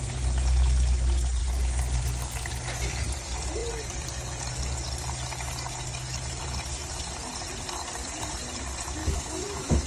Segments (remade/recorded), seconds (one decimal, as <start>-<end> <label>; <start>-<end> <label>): 0.0-9.0 recorded; 9.0-9.9 remade